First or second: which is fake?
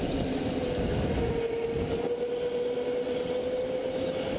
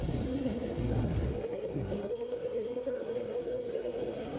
second